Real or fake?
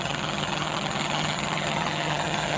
fake